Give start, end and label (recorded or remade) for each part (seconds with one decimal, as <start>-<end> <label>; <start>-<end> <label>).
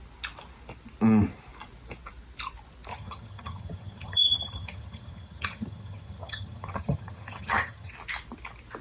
0.0-2.9 recorded; 2.9-7.9 remade; 7.9-8.8 recorded